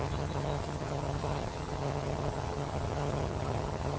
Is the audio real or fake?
fake